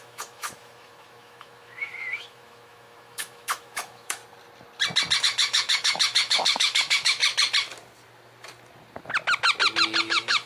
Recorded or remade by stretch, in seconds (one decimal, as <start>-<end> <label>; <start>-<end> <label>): 0.0-4.2 remade; 4.2-5.2 recorded; 5.2-7.2 remade; 7.2-10.0 recorded; 10.0-10.5 remade